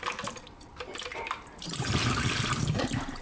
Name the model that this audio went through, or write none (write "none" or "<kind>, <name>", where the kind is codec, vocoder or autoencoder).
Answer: vocoder, BigVGAN v2